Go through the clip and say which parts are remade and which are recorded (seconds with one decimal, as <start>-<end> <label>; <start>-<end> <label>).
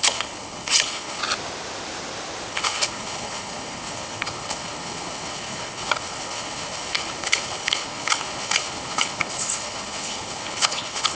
0.0-1.2 remade; 1.2-2.5 recorded; 2.5-11.1 remade